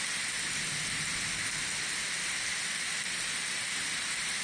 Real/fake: real